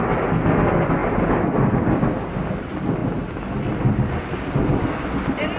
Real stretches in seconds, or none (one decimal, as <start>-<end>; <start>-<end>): 0.0-5.6